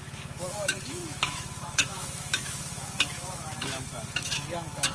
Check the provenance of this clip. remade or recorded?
remade